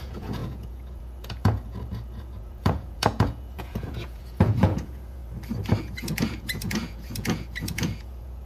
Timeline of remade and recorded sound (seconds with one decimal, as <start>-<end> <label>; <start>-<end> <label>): 0.0-5.2 remade; 5.2-5.8 recorded; 5.8-8.5 remade